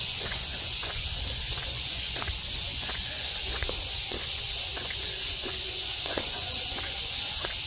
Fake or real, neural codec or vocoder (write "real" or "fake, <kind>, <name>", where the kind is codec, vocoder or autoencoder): fake, vocoder, Vocos